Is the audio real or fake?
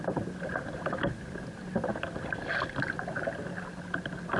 real